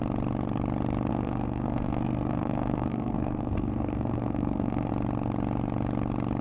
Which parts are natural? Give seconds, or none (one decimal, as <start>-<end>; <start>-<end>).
0.0-1.1; 4.9-6.4